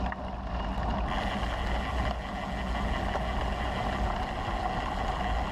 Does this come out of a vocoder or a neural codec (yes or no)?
no